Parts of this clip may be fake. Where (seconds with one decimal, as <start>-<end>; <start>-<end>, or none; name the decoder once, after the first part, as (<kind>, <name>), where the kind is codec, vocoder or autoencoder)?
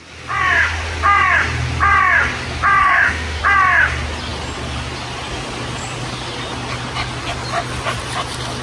2.8-3.4 (autoencoder, DAC-VAE)